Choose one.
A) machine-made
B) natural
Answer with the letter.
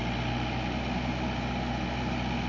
B